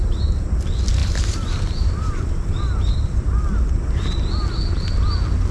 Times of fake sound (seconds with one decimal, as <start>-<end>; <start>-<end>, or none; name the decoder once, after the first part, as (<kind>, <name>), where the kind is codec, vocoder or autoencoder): 1.0-2.3 (vocoder, BigVGAN v2)